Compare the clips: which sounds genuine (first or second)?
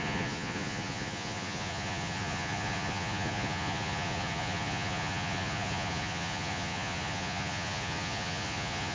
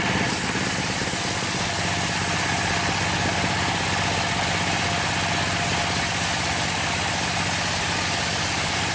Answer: second